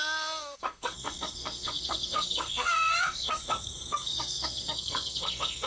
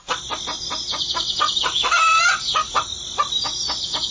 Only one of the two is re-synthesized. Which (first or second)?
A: first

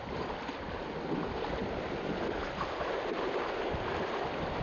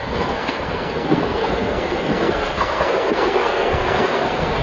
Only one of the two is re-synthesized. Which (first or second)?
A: second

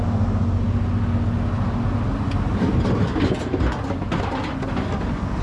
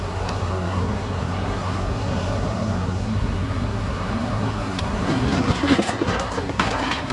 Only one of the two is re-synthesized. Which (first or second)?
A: second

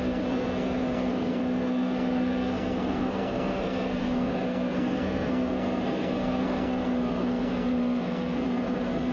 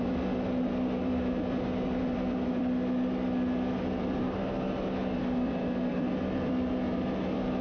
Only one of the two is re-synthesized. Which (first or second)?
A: first